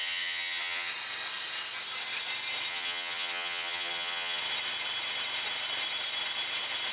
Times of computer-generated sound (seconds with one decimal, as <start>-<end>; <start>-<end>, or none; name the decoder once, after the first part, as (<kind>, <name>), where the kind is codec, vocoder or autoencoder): 0.0-0.9 (vocoder, HiFi-GAN); 2.7-4.4

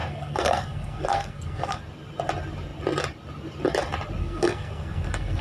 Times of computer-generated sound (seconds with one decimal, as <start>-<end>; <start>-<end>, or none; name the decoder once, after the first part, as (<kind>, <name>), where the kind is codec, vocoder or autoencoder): 0.0-1.8 (codec, SNAC); 4.2-5.4

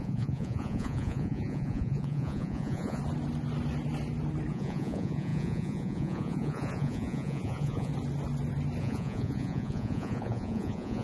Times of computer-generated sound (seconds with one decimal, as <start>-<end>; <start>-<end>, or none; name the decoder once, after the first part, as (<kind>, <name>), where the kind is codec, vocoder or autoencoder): 0.0-3.0 (vocoder, Vocos); 4.5-7.9; 8.8-11.0

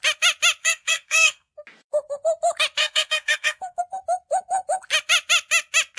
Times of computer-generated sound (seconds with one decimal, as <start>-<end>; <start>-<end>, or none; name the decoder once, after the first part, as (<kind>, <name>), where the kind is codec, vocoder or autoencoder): 0.6-1.5 (codec, SNAC); 2.8-3.8

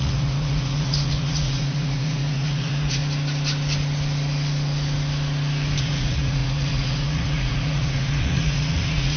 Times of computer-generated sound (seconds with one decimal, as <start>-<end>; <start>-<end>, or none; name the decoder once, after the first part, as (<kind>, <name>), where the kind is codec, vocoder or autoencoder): 0.0-3.0 (vocoder, Vocos); 5.8-9.2

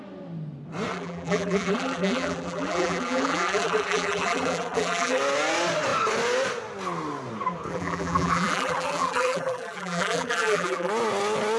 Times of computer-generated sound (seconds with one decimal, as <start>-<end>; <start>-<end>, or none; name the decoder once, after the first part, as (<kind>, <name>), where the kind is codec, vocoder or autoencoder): 0.9-5.2 (vocoder, BigVGAN v2); 7.7-10.9

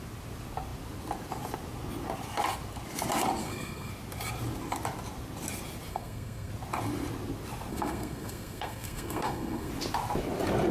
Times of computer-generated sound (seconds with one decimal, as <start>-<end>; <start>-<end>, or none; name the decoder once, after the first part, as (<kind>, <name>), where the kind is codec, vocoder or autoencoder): 3.4-3.9 (codec, SNAC); 5.9-6.5; 7.7-9.7

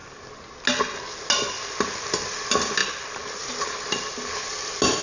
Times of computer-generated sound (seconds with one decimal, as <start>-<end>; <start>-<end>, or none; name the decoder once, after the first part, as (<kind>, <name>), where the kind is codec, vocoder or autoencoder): none